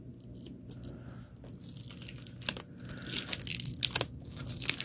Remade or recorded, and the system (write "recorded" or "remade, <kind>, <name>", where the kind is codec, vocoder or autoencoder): recorded